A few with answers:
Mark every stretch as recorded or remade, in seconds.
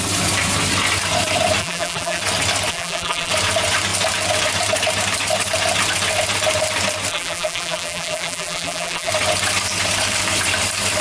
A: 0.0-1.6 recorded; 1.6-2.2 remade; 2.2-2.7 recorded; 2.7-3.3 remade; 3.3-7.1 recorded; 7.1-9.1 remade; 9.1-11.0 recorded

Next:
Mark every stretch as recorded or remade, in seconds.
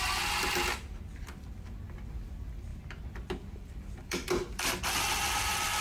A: 0.0-2.7 recorded; 2.7-4.8 remade; 4.8-5.8 recorded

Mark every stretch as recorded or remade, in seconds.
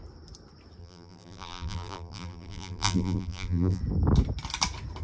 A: 0.0-0.8 recorded; 0.8-3.8 remade; 3.8-5.0 recorded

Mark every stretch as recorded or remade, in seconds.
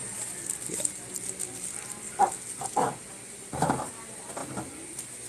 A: 0.0-5.3 recorded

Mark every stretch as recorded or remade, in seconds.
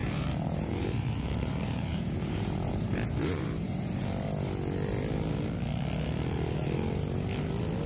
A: 0.0-4.0 remade; 4.0-7.9 recorded